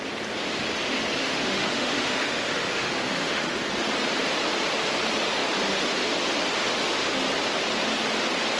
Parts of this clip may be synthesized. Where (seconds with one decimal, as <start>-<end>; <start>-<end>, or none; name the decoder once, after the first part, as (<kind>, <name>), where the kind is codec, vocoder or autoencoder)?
1.2-3.6 (autoencoder, DAC-VAE); 6.6-7.2